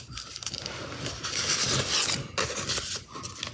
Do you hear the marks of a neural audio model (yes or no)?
no